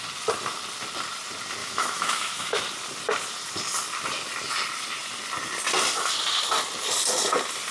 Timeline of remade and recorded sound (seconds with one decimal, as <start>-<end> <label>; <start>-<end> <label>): 0.0-1.6 recorded; 1.6-2.6 remade; 2.6-7.7 recorded